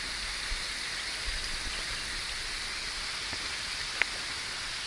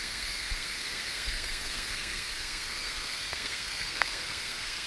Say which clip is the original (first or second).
first